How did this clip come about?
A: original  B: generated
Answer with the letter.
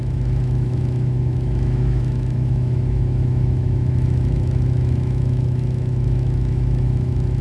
B